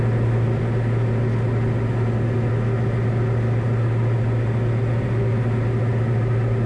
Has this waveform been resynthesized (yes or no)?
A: no